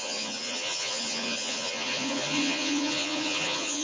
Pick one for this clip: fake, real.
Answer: fake